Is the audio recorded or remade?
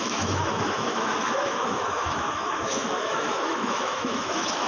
remade